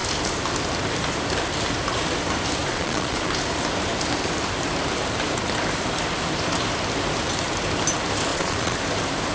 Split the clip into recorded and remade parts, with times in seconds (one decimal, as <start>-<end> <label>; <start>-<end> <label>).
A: 0.0-2.7 recorded; 2.7-3.3 remade; 3.3-8.3 recorded; 8.3-8.8 remade; 8.8-9.3 recorded